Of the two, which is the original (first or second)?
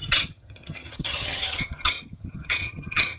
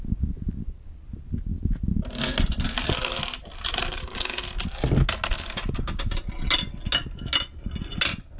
second